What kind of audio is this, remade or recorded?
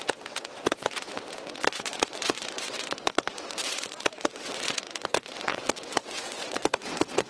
remade